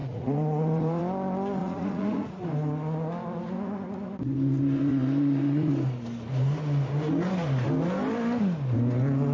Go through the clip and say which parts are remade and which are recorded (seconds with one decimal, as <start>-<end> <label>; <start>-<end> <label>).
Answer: 0.0-1.0 remade; 1.0-1.6 recorded; 1.6-2.5 remade; 2.5-4.9 recorded; 4.9-5.7 remade; 5.7-9.3 recorded